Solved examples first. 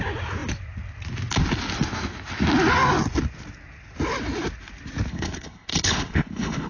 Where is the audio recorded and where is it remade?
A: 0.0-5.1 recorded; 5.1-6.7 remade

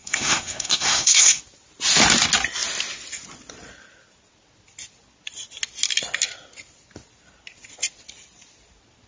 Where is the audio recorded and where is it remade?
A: 0.0-1.4 remade; 1.4-9.1 recorded

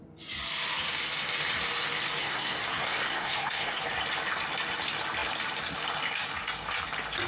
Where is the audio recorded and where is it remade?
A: 0.0-2.2 recorded; 2.2-3.8 remade; 3.8-7.3 recorded